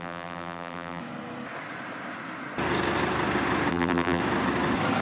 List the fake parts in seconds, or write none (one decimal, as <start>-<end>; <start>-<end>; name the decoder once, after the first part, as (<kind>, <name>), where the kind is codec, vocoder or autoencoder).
0.0-1.0 (vocoder, BigVGAN v2); 3.7-4.2